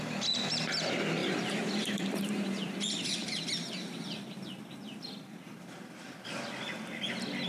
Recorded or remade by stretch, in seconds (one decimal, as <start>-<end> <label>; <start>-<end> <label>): 0.0-1.2 recorded; 1.2-3.4 remade; 3.4-7.5 recorded